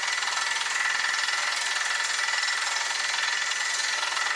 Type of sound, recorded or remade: recorded